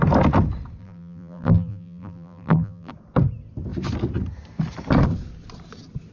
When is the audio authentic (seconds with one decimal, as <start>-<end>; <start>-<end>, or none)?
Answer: 0.0-0.8; 2.9-6.1